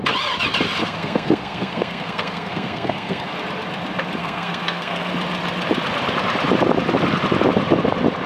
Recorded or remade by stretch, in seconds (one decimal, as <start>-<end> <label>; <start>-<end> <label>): 0.0-0.8 recorded; 0.8-3.3 remade; 3.3-4.2 recorded; 4.2-5.1 remade; 5.1-8.3 recorded